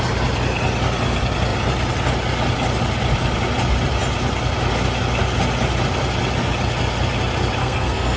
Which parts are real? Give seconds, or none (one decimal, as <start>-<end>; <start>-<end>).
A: 0.0-7.6